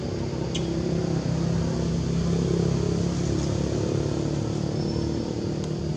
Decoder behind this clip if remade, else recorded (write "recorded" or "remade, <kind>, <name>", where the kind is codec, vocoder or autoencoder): recorded